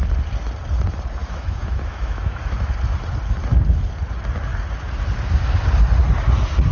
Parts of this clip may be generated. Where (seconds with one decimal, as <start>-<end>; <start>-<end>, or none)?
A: 1.2-2.7

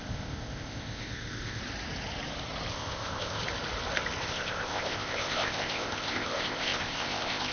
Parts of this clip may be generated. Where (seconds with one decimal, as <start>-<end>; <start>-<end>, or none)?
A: 0.0-1.6; 2.7-3.4; 4.2-7.5

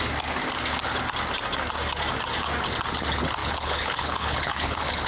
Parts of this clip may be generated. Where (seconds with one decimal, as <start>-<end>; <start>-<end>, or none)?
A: 3.4-5.1